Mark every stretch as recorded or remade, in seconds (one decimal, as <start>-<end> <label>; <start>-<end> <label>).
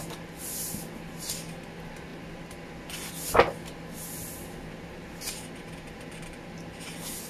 0.0-7.3 recorded